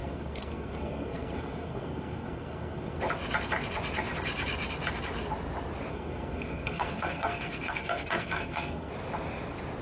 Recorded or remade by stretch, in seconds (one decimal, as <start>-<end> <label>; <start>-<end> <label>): 0.0-3.0 remade; 3.0-5.9 recorded; 5.9-8.9 remade; 8.9-9.8 recorded